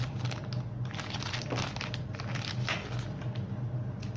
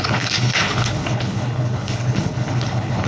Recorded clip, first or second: first